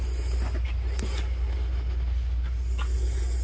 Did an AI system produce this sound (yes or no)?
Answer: no